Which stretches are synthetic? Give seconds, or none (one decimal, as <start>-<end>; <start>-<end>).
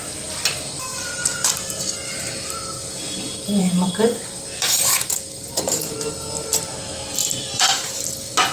0.9-1.7; 3.6-5.9; 7.2-8.0